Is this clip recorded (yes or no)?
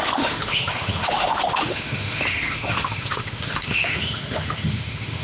no